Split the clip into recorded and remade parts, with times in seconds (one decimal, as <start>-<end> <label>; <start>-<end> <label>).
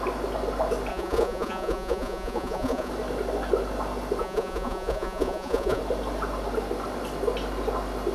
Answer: 0.0-0.9 recorded; 0.9-2.9 remade; 2.9-4.2 recorded; 4.2-5.8 remade; 5.8-8.1 recorded